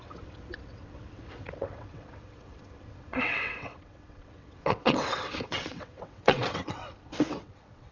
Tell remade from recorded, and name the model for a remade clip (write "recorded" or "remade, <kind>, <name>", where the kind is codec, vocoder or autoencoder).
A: remade, vocoder, WaveNeXt